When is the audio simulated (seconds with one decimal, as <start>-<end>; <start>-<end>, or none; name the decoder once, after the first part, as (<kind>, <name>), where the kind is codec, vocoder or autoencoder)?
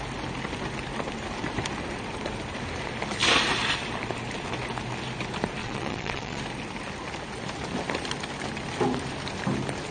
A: 5.6-6.4 (vocoder, Vocos)